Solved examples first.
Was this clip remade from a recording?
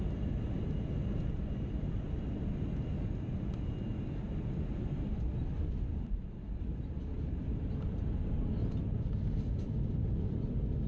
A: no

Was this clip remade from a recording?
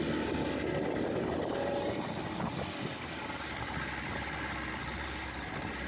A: no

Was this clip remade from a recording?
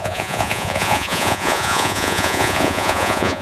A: yes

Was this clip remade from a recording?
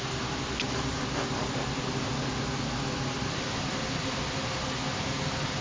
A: no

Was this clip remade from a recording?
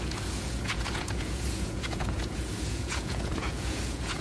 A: yes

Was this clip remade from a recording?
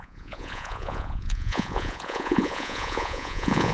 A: yes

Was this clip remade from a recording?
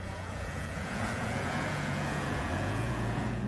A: yes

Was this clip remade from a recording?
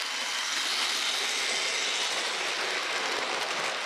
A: no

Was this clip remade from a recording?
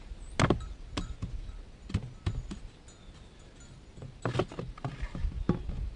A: no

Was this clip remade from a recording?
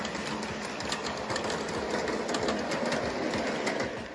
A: no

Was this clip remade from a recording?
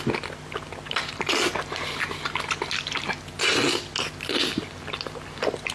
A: no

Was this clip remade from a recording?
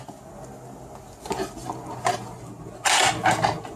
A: no